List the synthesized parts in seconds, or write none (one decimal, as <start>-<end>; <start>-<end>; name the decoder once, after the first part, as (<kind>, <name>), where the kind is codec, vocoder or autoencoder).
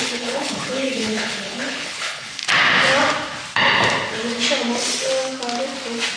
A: 0.0-2.4 (codec, HILCodec)